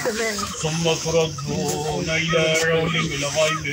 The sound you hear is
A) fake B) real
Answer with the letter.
A